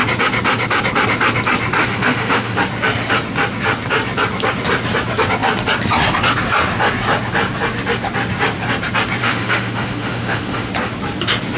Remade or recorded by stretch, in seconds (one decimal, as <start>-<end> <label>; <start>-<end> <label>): 0.0-1.8 recorded; 1.8-2.6 remade; 2.6-9.2 recorded; 9.2-10.7 remade; 10.7-11.6 recorded